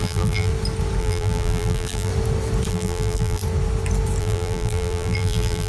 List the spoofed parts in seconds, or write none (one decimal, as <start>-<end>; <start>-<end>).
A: 0.0-0.5; 1.0-2.1; 2.7-3.4; 4.2-5.7